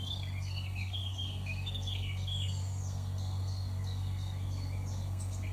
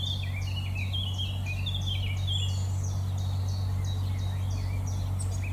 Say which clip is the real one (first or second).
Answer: second